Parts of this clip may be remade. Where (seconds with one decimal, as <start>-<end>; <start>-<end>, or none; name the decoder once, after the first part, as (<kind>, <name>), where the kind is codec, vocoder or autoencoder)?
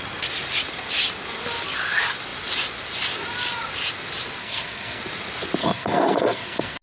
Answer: 4.4-5.0 (codec, SNAC); 5.6-6.8